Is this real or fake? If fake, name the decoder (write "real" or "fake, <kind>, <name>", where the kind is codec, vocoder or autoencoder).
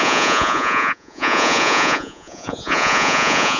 fake, vocoder, Vocos